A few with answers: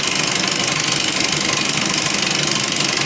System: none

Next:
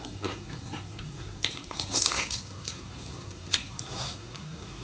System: codec, SNAC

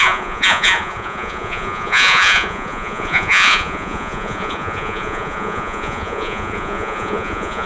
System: vocoder, Vocos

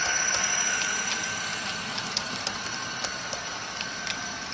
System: none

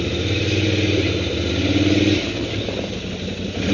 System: none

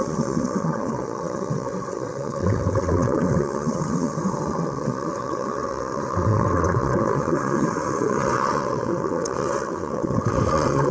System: vocoder, WaveNeXt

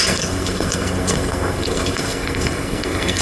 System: codec, SNAC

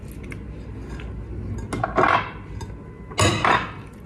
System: none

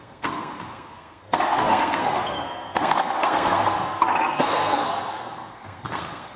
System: codec, SNAC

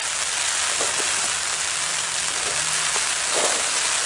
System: none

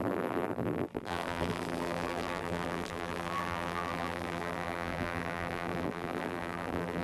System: vocoder, BigVGAN v2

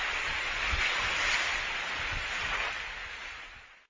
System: none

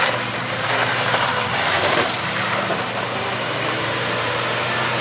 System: vocoder, BigVGAN v2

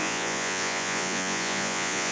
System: vocoder, Vocos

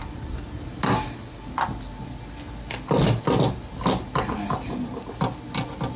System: none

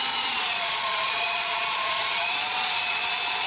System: vocoder, Vocos